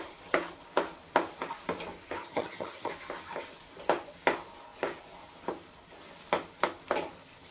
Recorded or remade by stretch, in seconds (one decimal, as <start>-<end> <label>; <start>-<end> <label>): 0.0-2.2 recorded; 2.2-2.9 remade; 2.9-7.5 recorded